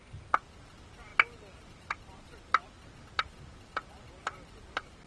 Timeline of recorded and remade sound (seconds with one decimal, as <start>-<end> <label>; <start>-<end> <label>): 0.0-5.1 recorded